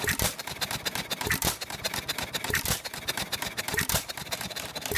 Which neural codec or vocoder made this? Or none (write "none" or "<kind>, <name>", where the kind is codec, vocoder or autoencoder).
vocoder, BigVGAN v2